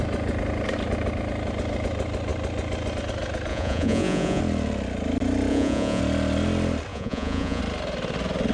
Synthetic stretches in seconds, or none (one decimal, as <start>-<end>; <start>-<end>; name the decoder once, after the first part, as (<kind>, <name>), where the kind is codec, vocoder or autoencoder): 3.5-4.4 (vocoder, Vocos); 5.5-6.0; 6.9-7.6